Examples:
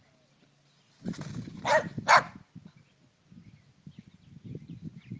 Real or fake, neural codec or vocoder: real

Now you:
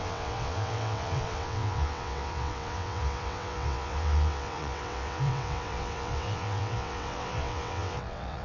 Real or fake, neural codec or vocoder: fake, vocoder, WaveNeXt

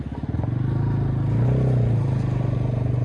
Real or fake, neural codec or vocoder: real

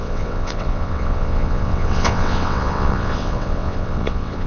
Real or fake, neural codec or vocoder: fake, vocoder, WaveNeXt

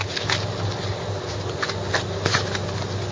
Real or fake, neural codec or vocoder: real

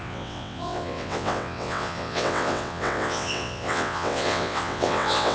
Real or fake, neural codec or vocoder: fake, vocoder, WaveNeXt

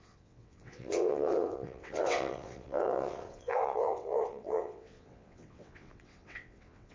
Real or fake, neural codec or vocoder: fake, vocoder, WaveNeXt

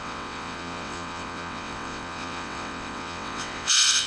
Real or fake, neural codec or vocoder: fake, vocoder, WaveNeXt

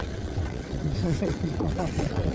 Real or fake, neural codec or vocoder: fake, vocoder, WaveNeXt